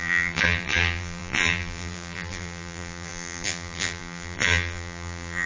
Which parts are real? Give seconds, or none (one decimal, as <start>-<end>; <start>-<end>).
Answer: none